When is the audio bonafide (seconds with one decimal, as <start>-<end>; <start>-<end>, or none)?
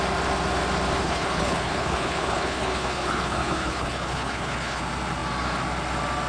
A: 0.0-1.0; 4.8-6.3